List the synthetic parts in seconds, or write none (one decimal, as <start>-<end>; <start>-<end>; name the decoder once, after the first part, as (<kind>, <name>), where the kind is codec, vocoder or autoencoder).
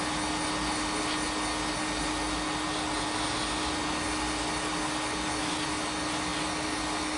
none